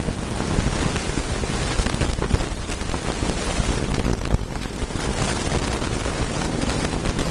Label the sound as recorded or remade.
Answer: recorded